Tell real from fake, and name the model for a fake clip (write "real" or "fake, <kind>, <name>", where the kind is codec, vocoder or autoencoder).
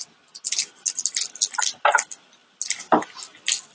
real